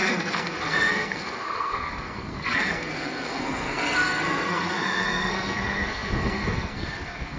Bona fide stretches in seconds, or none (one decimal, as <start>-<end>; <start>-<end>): none